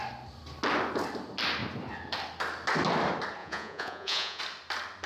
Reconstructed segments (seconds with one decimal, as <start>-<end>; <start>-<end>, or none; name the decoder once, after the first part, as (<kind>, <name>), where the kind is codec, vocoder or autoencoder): 3.4-4.4 (vocoder, Vocos)